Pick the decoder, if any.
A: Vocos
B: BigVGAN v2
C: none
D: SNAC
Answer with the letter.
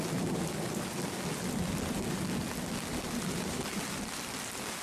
C